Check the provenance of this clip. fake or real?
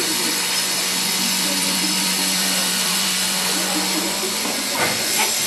fake